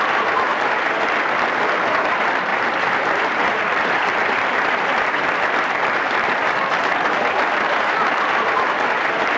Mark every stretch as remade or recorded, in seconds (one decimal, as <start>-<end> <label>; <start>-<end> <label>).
0.0-0.5 remade; 0.5-2.1 recorded; 2.1-9.4 remade